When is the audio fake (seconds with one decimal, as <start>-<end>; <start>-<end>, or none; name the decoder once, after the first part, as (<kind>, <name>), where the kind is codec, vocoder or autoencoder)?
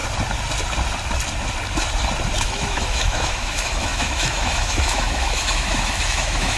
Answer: 2.4-6.6 (autoencoder, DAC-VAE)